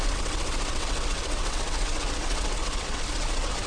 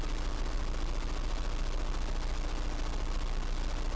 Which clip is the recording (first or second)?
second